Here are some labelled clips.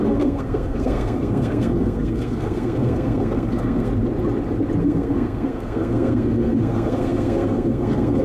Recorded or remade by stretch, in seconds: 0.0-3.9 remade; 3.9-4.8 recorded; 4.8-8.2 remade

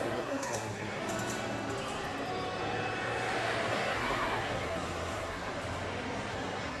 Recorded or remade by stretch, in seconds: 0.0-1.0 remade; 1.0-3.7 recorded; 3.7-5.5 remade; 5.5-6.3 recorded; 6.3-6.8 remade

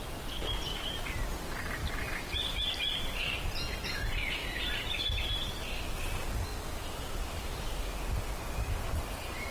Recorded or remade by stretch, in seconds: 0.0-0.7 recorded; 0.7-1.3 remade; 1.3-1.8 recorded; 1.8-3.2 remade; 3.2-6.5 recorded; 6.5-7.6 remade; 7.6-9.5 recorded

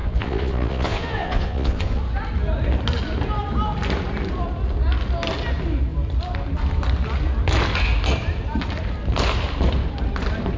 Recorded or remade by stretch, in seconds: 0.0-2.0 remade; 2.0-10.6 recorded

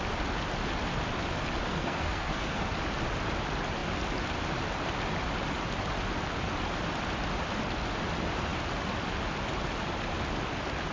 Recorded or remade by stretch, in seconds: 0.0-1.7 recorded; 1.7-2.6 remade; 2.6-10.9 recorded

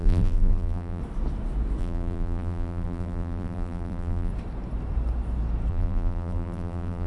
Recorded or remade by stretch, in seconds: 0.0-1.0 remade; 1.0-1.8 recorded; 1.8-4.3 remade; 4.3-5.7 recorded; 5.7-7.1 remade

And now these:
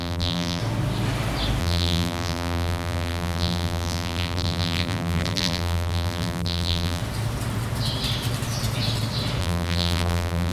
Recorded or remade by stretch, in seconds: 0.0-0.6 remade; 0.6-1.6 recorded; 1.6-7.0 remade; 7.0-9.4 recorded; 9.4-10.5 remade